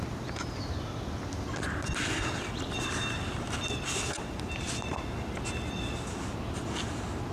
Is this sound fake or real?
real